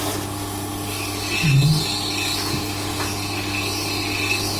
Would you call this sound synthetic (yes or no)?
no